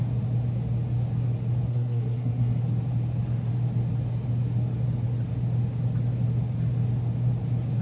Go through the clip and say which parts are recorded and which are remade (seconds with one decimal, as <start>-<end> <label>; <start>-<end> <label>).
0.0-1.7 recorded; 1.7-2.6 remade; 2.6-7.8 recorded